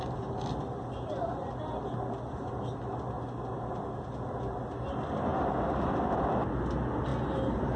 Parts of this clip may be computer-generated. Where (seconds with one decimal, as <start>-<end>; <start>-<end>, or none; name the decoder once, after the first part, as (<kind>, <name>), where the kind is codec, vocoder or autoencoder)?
none